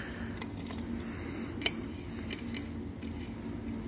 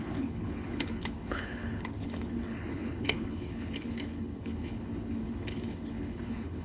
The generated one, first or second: second